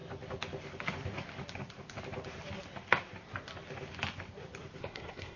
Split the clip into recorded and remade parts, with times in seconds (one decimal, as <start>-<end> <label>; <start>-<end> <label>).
0.0-4.8 recorded; 4.8-5.4 remade